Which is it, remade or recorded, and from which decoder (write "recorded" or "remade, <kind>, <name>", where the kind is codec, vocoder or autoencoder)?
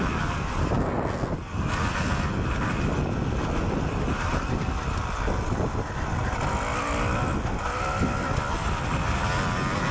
recorded